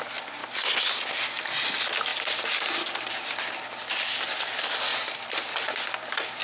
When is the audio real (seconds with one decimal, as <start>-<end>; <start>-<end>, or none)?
0.0-2.1; 3.5-6.4